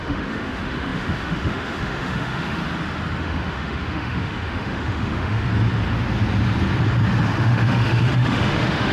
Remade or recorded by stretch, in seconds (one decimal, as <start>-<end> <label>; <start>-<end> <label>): 0.0-2.6 remade; 2.6-3.2 recorded; 3.2-5.5 remade; 5.5-7.4 recorded; 7.4-8.9 remade